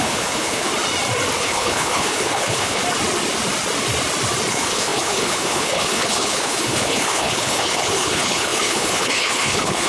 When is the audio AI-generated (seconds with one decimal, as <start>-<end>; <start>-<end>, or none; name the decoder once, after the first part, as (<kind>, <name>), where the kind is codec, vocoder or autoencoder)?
0.0-0.7 (codec, HILCodec); 1.4-2.8; 4.5-9.9